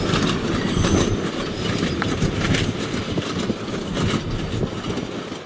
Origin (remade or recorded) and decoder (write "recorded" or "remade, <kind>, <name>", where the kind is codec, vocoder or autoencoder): recorded